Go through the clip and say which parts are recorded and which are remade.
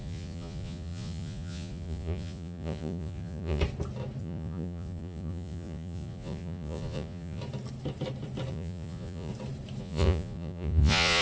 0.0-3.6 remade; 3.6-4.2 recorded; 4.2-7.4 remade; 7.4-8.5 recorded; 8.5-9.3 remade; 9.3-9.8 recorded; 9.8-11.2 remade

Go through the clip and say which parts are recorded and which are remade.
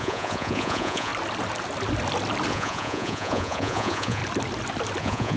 0.0-1.1 remade; 1.1-2.5 recorded; 2.5-4.2 remade; 4.2-5.0 recorded; 5.0-5.4 remade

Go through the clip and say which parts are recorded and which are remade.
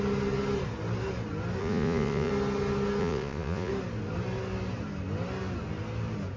0.0-1.6 recorded; 1.6-2.3 remade; 2.3-3.0 recorded; 3.0-3.7 remade; 3.7-6.4 recorded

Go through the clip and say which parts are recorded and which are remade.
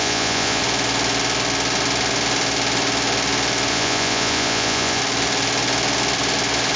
0.0-0.6 remade; 0.6-3.7 recorded; 3.7-5.0 remade; 5.0-6.8 recorded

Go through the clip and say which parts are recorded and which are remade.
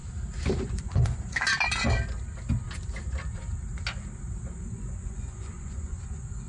0.0-0.6 recorded; 0.6-1.5 remade; 1.5-4.6 recorded; 4.6-6.5 remade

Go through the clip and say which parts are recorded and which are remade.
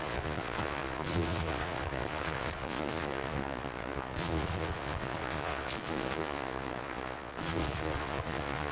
0.0-8.7 remade